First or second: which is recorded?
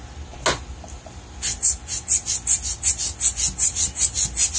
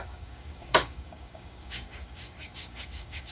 first